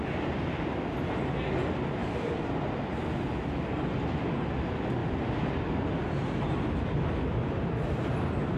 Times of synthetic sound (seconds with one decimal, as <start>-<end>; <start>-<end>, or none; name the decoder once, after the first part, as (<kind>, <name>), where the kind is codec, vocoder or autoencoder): 2.0-4.1 (vocoder, BigVGAN v2)